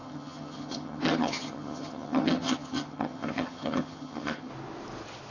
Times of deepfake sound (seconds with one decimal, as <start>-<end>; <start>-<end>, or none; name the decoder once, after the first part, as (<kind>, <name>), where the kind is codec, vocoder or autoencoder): 0.0-4.5 (vocoder, HiFi-GAN)